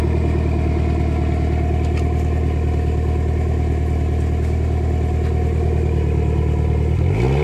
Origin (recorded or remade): recorded